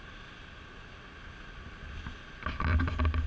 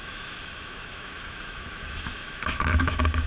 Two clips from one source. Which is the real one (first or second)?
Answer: first